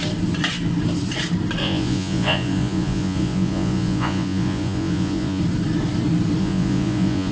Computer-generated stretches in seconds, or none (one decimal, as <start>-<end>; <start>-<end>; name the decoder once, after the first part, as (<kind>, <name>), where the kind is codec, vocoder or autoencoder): 1.6-5.4 (vocoder, Vocos); 6.4-7.3